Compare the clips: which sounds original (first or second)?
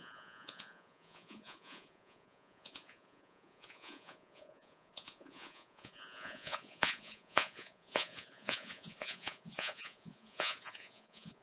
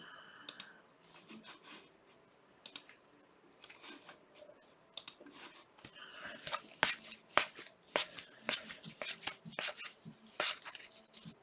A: second